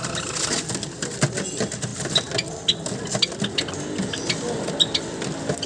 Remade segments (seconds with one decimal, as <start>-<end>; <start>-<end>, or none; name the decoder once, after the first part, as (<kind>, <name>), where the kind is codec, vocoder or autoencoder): none